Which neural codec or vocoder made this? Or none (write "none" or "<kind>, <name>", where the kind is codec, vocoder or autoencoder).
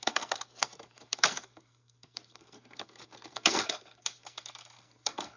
codec, SNAC